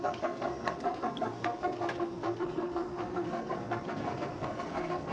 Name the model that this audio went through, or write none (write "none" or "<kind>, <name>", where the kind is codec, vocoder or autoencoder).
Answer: codec, SNAC